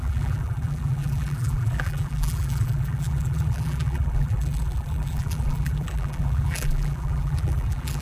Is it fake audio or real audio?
fake